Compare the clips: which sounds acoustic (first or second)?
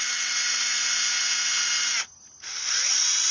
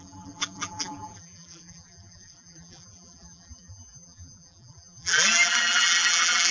first